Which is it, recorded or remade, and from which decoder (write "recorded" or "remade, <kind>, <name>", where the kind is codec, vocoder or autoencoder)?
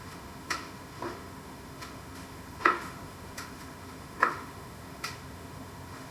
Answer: remade, autoencoder, DAC-VAE